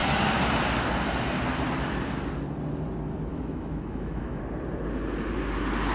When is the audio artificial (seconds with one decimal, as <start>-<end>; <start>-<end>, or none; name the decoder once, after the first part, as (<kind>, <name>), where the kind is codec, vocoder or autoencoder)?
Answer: 3.3-4.4 (autoencoder, DAC-VAE)